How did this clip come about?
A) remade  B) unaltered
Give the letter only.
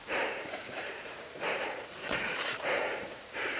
A